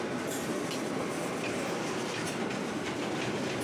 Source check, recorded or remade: recorded